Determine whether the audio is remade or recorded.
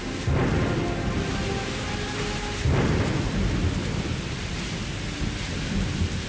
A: recorded